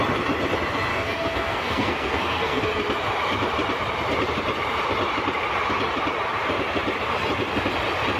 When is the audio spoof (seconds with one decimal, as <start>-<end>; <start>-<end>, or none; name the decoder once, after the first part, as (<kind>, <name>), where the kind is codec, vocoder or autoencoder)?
0.9-2.6 (codec, SNAC)